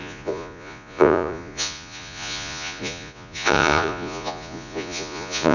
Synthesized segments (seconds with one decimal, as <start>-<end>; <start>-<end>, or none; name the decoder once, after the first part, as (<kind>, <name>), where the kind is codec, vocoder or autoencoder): 0.0-5.5 (vocoder, Vocos)